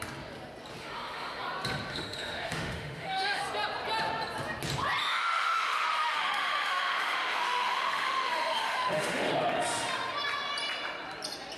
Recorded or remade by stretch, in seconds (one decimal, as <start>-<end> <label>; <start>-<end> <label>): 0.0-0.8 recorded; 0.8-1.4 remade; 1.4-1.9 recorded; 1.9-3.4 remade; 3.4-5.0 recorded; 5.0-9.3 remade; 9.3-11.6 recorded